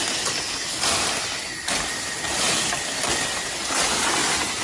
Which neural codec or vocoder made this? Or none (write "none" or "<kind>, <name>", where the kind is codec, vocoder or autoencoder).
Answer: none